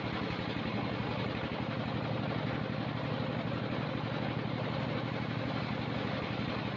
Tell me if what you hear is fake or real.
real